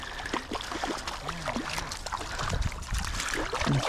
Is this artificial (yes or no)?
no